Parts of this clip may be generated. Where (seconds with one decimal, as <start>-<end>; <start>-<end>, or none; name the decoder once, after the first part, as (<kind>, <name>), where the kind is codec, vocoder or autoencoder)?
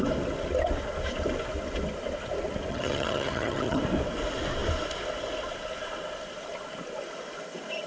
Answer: 2.7-3.8 (vocoder, HiFi-GAN)